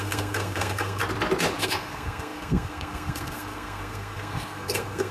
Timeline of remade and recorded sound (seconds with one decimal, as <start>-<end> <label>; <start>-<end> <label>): 0.0-1.0 remade; 1.0-1.6 recorded; 1.6-5.1 remade